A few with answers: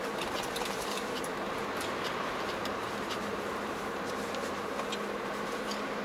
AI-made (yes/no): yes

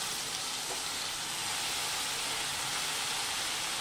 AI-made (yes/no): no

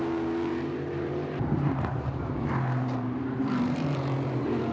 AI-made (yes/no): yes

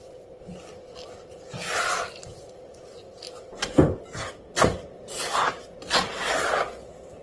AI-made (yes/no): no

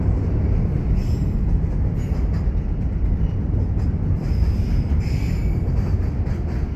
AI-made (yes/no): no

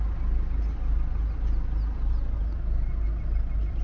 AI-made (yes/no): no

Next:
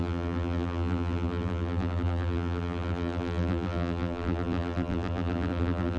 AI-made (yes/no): yes